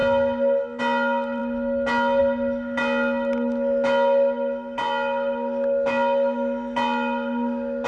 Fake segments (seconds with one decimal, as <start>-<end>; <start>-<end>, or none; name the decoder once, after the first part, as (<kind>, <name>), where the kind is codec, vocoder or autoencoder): none